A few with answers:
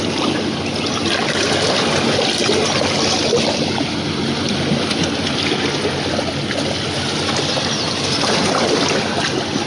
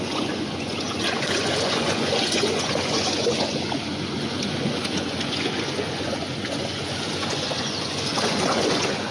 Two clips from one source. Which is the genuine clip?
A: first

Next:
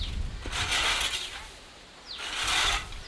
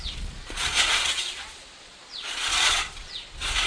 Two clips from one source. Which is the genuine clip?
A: first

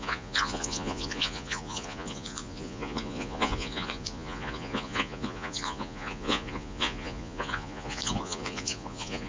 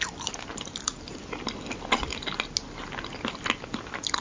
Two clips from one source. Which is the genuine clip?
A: second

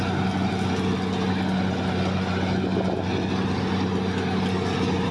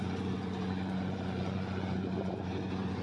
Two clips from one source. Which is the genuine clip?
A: first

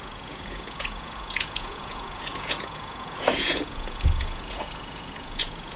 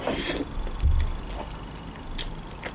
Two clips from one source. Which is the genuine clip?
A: second